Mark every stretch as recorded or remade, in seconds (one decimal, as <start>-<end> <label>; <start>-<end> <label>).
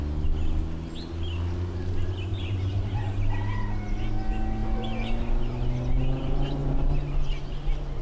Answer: 0.0-2.3 recorded; 2.3-3.0 remade; 3.0-8.0 recorded